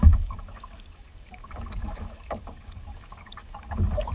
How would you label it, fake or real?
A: fake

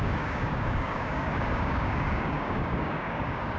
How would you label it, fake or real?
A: fake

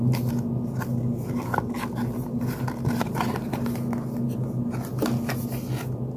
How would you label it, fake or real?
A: real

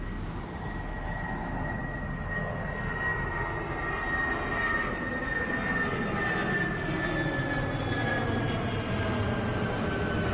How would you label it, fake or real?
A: real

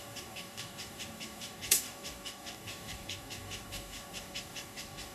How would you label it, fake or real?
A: fake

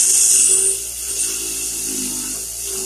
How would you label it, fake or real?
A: real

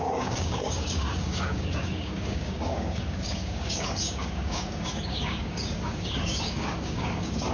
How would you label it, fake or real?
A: fake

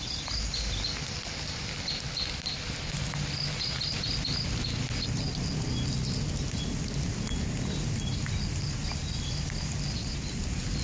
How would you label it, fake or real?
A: real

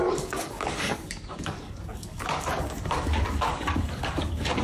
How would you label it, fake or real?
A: fake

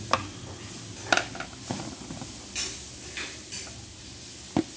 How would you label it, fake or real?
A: real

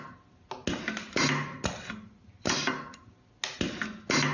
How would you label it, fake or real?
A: real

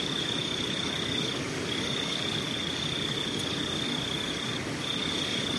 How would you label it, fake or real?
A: fake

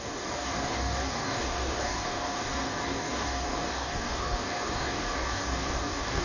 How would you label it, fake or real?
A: fake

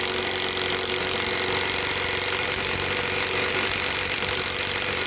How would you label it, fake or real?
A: real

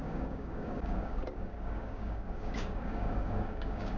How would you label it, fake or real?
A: fake